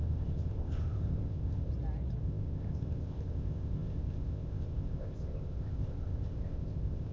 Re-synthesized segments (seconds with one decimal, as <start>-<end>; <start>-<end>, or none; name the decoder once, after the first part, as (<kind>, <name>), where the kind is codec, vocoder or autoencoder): 0.0-1.7 (codec, ZipCodec); 2.2-7.1